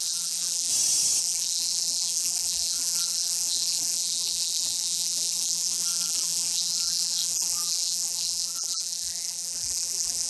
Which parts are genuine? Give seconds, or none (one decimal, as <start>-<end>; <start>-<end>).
0.7-1.2